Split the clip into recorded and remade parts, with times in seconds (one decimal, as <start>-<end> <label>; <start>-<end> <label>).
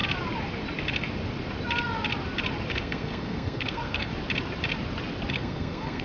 0.0-2.7 recorded; 2.7-4.1 remade; 4.1-5.3 recorded; 5.3-6.0 remade